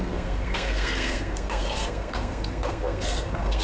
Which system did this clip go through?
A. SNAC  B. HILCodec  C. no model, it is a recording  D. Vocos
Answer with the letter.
A